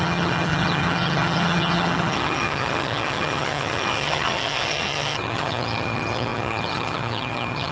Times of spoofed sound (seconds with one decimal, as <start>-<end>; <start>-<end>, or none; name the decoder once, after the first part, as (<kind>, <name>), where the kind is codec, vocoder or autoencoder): 0.0-7.7 (vocoder, HiFi-GAN)